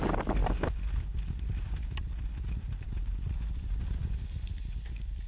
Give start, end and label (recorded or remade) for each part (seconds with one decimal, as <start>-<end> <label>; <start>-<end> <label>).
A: 0.0-5.3 recorded